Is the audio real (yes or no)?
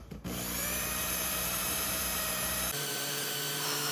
no